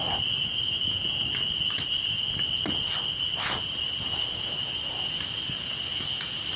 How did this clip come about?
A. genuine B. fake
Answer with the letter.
A